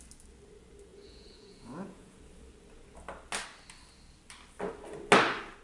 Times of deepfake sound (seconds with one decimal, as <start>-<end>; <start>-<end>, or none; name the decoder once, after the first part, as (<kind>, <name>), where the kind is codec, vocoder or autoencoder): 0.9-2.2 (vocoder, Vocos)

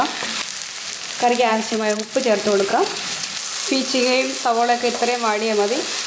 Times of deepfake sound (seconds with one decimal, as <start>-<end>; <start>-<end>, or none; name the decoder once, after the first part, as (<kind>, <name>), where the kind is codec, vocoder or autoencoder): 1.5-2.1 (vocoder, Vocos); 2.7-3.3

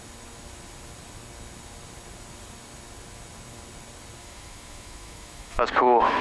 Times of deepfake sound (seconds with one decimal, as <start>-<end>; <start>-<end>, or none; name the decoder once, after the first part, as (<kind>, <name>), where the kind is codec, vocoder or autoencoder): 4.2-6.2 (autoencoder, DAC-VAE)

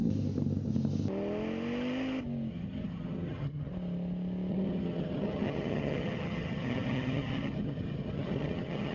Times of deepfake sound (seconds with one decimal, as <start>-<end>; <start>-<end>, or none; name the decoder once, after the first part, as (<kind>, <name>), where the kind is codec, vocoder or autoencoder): 2.5-3.7 (vocoder, HiFi-GAN); 4.5-8.9